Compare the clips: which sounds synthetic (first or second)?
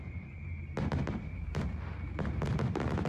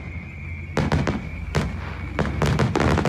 first